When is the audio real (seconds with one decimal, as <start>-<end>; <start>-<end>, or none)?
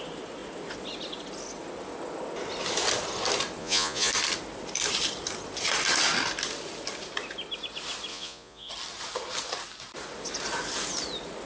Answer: 0.0-3.6; 4.1-8.1; 8.7-11.5